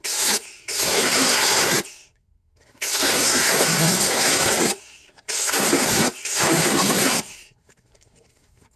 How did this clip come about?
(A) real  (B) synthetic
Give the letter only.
B